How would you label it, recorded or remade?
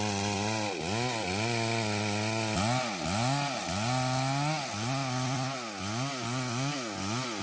recorded